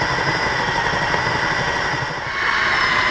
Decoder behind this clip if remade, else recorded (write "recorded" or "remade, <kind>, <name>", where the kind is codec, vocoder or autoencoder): recorded